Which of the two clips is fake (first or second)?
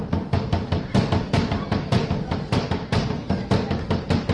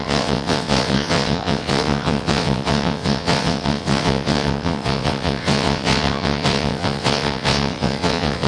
second